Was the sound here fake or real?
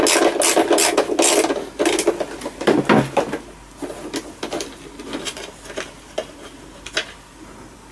real